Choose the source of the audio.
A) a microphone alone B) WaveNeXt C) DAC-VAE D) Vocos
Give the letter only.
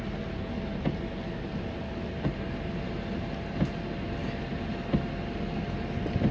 A